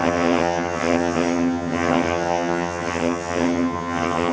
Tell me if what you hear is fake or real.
fake